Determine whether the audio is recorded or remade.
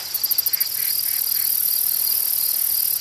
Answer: recorded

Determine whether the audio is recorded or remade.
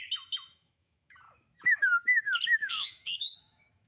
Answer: remade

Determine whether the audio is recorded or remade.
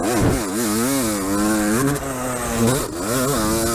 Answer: recorded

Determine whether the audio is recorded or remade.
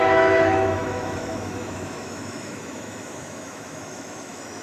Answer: remade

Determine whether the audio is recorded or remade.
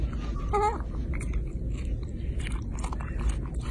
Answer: recorded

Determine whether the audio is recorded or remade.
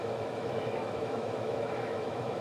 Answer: remade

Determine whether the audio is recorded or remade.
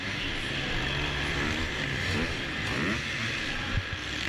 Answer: recorded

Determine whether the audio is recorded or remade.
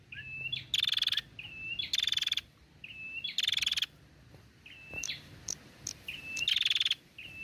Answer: recorded